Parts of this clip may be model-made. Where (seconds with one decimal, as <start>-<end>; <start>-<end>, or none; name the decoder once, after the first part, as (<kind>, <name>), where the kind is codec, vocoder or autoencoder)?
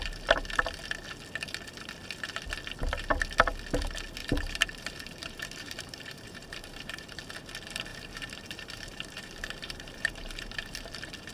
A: 4.2-7.2 (vocoder, BigVGAN v2); 7.9-11.3